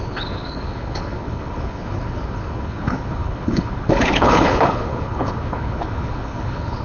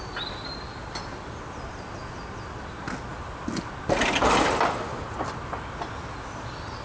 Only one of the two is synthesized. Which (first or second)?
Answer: first